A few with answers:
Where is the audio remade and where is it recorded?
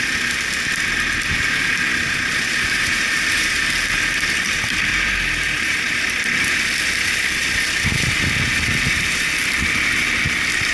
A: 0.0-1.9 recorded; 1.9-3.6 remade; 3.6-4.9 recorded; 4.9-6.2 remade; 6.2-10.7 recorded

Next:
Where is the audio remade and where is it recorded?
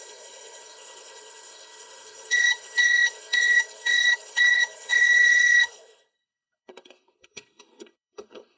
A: 0.0-8.6 remade